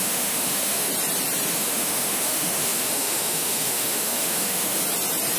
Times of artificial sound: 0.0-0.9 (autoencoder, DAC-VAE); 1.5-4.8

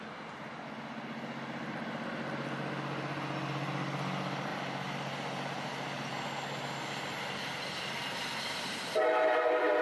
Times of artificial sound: none

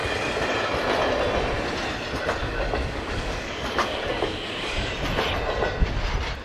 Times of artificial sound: 2.4-4.9 (codec, DAC)

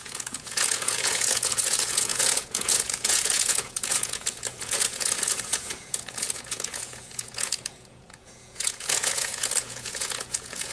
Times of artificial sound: 0.0-10.7 (vocoder, Vocos)

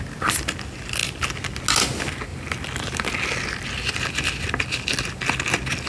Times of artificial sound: none

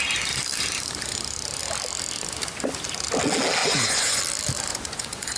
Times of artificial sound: 3.6-4.2 (vocoder, Vocos); 4.7-5.4

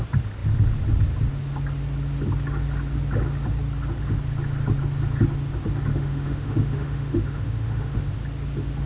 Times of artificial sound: 5.9-8.1 (autoencoder, DAC-VAE)